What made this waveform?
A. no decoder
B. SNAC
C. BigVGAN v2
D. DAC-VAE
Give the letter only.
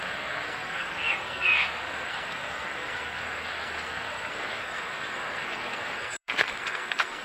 B